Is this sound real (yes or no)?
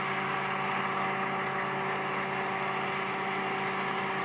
yes